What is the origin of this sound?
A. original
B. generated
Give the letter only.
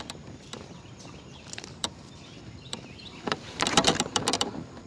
B